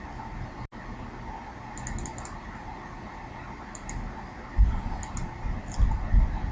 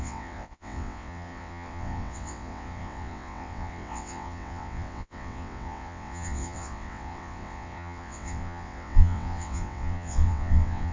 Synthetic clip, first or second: second